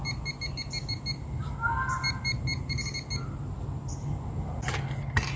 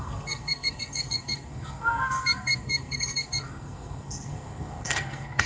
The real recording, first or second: first